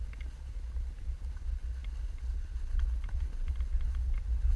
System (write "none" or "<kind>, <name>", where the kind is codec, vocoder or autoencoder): none